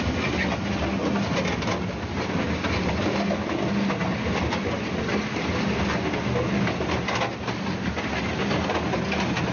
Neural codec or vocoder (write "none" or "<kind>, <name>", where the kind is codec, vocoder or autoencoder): none